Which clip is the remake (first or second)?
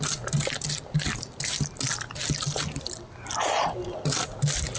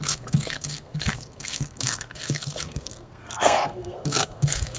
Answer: second